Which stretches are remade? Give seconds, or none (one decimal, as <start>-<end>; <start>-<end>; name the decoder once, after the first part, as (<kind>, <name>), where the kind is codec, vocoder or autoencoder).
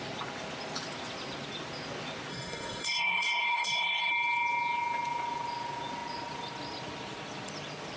2.3-4.1 (codec, SNAC)